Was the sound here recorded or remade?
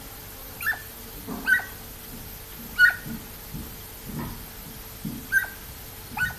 recorded